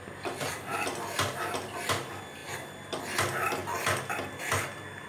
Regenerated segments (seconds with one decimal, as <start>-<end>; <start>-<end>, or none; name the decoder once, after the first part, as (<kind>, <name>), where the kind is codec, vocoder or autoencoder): 2.4-3.0 (vocoder, BigVGAN v2)